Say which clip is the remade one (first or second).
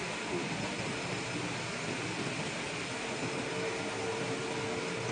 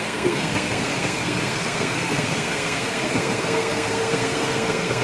second